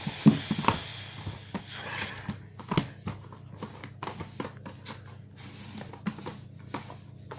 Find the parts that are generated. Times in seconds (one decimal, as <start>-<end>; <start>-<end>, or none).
0.9-1.6